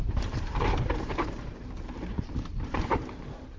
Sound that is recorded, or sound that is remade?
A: remade